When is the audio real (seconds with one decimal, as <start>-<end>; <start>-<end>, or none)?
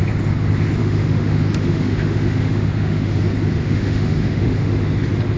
0.0-0.8; 3.2-3.6; 4.8-5.4